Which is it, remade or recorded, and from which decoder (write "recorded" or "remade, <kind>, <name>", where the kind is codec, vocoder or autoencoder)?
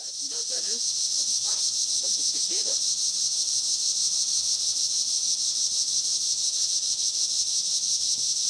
remade, autoencoder, DAC-VAE